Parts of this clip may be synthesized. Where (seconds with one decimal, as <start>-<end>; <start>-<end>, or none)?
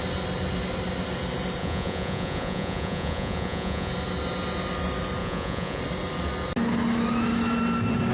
1.6-3.9; 5.2-5.8